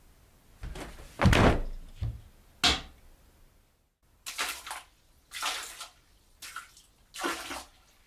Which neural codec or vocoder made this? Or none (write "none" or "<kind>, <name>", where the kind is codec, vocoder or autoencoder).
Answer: none